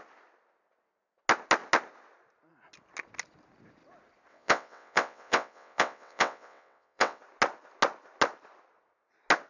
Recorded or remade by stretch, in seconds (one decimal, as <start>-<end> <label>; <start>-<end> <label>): 0.0-4.3 recorded; 4.3-7.2 remade; 7.2-9.5 recorded